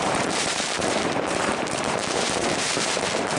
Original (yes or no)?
no